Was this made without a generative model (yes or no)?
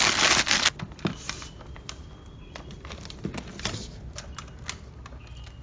yes